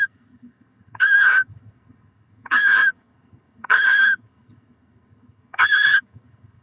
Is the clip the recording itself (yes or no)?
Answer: no